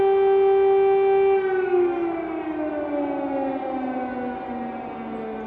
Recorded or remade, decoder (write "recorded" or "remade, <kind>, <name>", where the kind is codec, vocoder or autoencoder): recorded